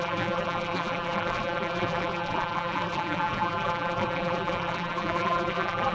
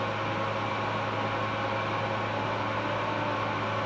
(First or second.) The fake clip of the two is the first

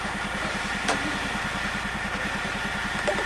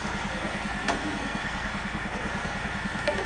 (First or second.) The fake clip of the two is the second